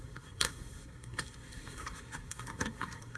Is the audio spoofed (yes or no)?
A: yes